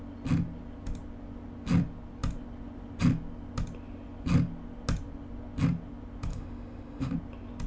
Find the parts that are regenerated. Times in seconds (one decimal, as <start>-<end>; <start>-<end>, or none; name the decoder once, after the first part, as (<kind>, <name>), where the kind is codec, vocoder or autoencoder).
6.3-7.1 (autoencoder, DAC-VAE)